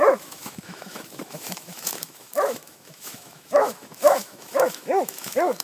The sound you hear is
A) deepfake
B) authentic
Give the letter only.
A